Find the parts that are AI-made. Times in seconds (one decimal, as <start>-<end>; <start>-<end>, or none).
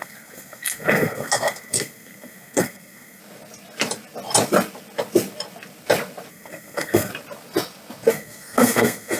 0.0-3.2; 6.3-7.1; 8.1-9.2